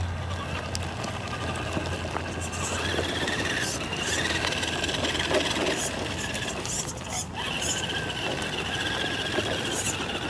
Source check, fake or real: real